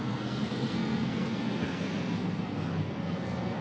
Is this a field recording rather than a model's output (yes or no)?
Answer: no